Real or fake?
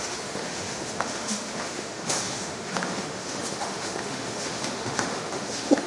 fake